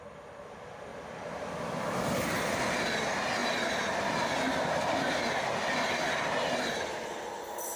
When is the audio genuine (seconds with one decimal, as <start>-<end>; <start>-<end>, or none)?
0.0-7.8